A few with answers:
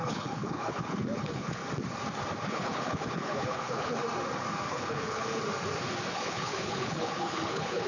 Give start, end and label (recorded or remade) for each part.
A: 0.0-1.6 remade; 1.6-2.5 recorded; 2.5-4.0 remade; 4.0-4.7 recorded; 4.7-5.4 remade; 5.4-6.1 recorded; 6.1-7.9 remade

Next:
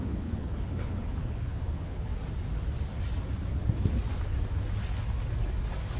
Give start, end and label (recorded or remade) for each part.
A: 0.0-2.1 remade; 2.1-6.0 recorded

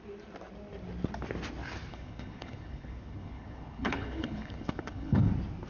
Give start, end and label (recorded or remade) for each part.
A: 0.0-1.9 recorded; 1.9-5.3 remade; 5.3-5.7 recorded

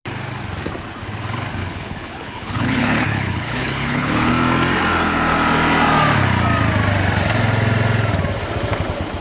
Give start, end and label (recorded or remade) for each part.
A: 0.0-1.6 recorded; 1.6-4.3 remade; 4.3-9.2 recorded

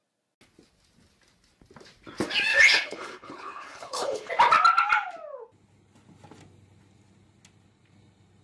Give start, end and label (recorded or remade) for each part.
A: 0.0-2.5 recorded; 2.5-4.3 remade; 4.3-8.4 recorded

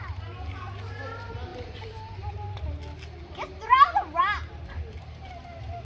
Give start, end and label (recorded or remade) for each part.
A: 0.0-5.8 recorded

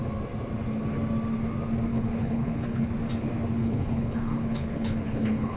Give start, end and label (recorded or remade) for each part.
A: 0.0-1.9 recorded; 1.9-2.9 remade; 2.9-3.6 recorded; 3.6-5.6 remade